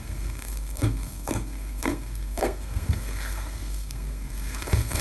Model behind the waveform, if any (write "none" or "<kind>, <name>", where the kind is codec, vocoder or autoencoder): codec, SNAC